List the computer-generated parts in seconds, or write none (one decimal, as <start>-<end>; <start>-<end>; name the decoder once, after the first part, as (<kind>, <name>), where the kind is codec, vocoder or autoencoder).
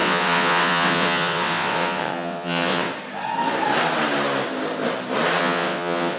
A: 0.0-2.9 (vocoder, WaveNeXt); 5.4-6.2